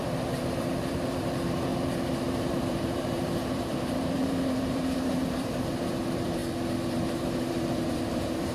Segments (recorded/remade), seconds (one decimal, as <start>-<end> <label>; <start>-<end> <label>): 0.0-6.4 remade; 6.4-6.9 recorded; 6.9-8.5 remade